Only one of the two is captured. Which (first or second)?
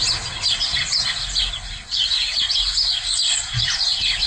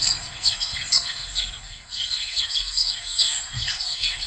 first